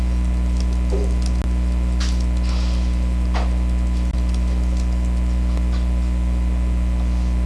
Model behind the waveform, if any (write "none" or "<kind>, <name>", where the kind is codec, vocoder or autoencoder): none